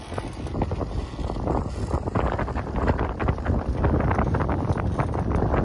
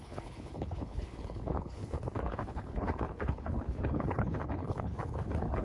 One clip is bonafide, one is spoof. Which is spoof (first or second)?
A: second